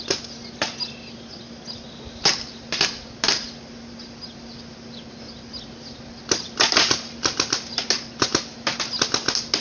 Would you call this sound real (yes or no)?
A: yes